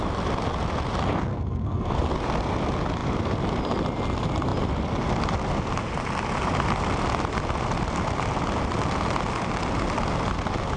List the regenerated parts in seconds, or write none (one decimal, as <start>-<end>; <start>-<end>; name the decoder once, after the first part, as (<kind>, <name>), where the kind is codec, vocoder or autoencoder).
1.3-2.0 (codec, SNAC)